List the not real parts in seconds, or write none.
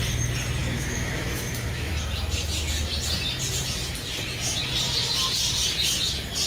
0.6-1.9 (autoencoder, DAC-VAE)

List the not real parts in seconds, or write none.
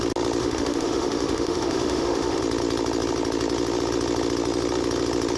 0.4-2.4 (autoencoder, DAC-VAE)